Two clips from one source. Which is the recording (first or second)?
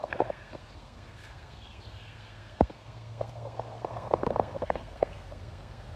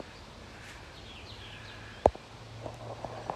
second